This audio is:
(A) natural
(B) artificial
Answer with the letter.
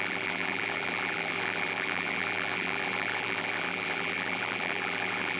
B